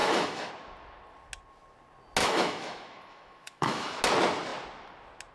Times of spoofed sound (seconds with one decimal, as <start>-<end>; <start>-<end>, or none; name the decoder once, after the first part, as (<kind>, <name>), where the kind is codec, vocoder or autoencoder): 0.0-0.5 (autoencoder, DAC-VAE); 2.2-4.0